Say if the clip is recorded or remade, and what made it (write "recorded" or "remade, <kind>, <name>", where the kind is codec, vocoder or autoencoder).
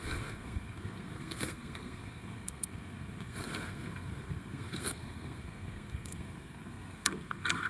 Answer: remade, codec, SNAC